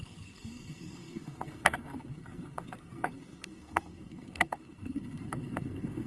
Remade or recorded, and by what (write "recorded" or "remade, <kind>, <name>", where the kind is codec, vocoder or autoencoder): remade, codec, SNAC